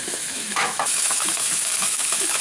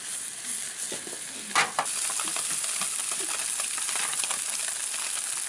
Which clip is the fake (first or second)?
first